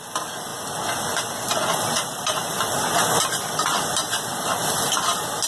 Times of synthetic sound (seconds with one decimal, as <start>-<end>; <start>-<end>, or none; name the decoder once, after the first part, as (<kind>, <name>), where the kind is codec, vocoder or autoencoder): none